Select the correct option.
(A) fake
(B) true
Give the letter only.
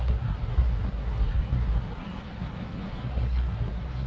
A